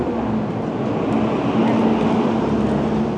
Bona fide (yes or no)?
yes